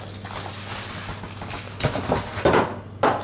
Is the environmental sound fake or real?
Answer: real